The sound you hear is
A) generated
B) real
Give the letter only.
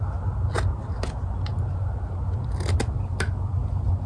B